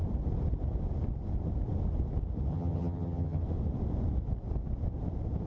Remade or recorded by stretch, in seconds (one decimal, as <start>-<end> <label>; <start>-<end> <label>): 0.0-2.5 recorded; 2.5-3.4 remade; 3.4-5.5 recorded